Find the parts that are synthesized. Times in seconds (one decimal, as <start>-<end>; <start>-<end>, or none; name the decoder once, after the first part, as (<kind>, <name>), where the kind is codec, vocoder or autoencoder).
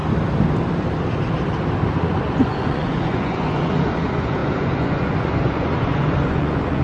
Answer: 2.0-6.8 (vocoder, Vocos)